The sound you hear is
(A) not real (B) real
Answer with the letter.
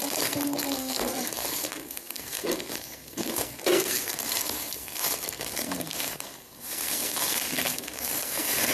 A